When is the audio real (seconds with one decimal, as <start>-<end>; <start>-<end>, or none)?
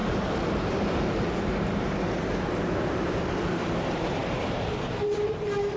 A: 2.2-3.4